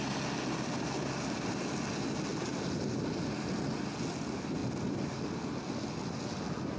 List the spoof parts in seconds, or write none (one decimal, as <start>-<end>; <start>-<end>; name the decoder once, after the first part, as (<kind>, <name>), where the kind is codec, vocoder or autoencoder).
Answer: none